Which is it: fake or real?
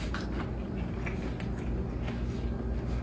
real